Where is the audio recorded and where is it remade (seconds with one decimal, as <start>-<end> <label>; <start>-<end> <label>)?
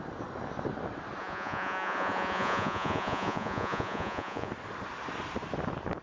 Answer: 0.0-1.2 recorded; 1.2-4.5 remade; 4.5-6.0 recorded